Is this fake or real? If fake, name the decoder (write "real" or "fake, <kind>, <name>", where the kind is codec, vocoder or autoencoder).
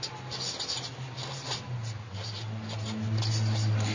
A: real